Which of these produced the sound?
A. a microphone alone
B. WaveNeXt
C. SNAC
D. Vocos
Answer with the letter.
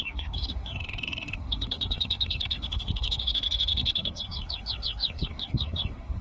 C